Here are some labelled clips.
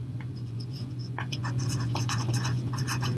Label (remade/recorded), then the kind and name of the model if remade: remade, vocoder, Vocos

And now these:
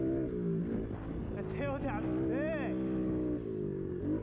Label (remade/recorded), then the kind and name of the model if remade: recorded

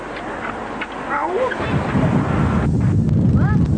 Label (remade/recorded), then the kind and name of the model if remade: recorded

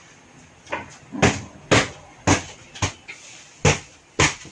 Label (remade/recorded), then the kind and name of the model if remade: recorded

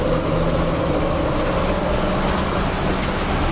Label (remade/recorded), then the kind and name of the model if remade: recorded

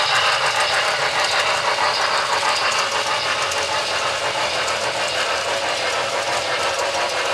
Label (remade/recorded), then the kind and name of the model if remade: recorded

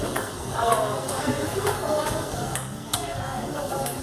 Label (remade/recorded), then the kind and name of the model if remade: remade, codec, SNAC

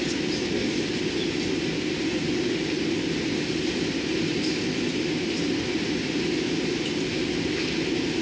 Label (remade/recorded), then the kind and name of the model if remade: recorded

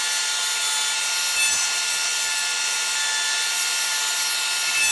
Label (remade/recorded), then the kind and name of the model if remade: recorded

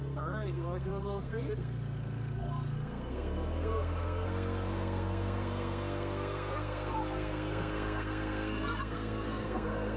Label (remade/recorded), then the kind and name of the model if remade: remade, codec, SNAC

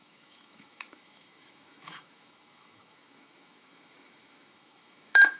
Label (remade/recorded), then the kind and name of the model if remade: remade, autoencoder, DAC-VAE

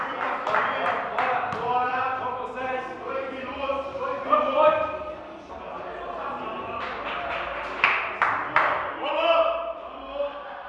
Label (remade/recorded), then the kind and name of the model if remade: remade, vocoder, BigVGAN v2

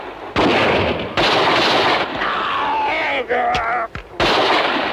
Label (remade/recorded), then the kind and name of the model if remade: recorded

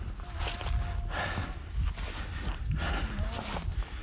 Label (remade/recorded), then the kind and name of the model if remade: recorded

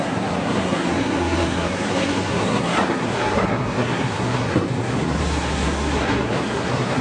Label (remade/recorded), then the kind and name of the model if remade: remade, codec, SNAC